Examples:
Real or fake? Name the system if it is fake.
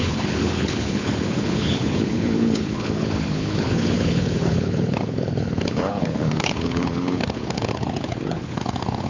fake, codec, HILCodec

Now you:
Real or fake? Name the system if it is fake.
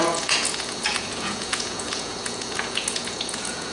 fake, vocoder, Vocos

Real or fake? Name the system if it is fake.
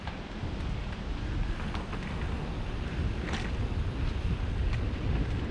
real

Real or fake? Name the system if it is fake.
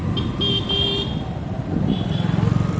real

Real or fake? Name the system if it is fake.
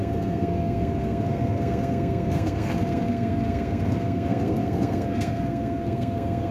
fake, codec, SNAC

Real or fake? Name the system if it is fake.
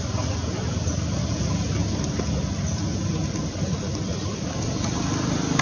real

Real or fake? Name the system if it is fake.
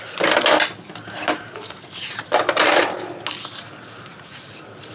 real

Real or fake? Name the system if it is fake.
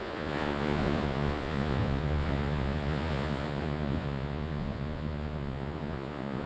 fake, vocoder, Vocos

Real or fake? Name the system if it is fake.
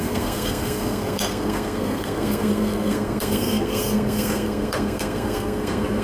fake, codec, SNAC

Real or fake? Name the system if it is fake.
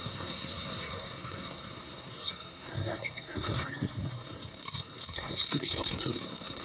fake, codec, SNAC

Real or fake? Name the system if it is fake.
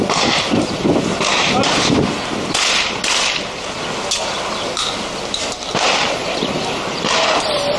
real